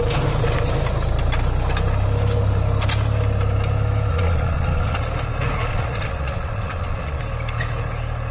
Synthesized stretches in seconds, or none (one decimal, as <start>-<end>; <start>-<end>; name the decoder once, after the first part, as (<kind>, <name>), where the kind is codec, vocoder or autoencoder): 4.1-5.0 (vocoder, Vocos); 5.7-7.2